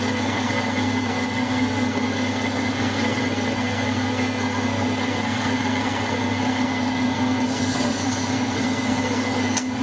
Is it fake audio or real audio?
fake